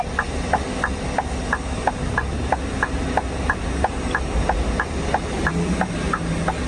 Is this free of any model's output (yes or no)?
yes